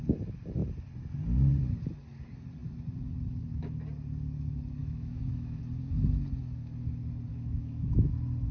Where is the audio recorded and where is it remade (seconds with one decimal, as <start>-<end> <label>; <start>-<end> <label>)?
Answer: 0.0-4.8 recorded; 4.8-5.6 remade; 5.6-7.3 recorded; 7.3-8.1 remade; 8.1-8.5 recorded